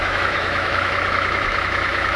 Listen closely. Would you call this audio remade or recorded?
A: remade